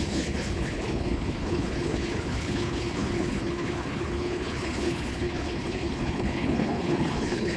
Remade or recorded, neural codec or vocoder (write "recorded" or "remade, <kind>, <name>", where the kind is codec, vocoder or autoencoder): remade, codec, HILCodec